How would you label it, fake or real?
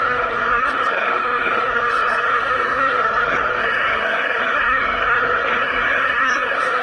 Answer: fake